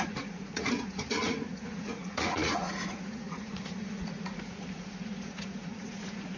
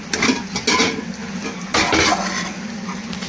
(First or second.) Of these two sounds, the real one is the second